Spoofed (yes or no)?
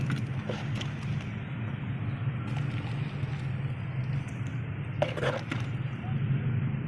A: no